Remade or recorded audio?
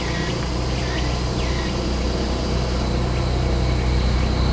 recorded